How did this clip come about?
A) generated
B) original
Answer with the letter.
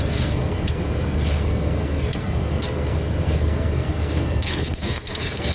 A